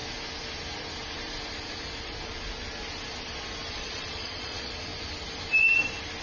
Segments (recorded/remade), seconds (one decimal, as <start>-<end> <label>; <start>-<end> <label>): 0.0-3.7 recorded; 3.7-4.9 remade; 4.9-6.2 recorded